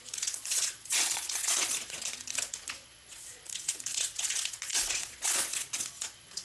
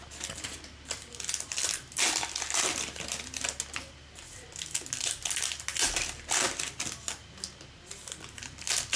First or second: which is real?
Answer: second